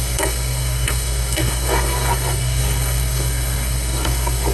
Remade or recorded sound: remade